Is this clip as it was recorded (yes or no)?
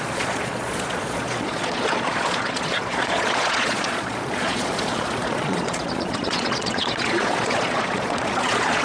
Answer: no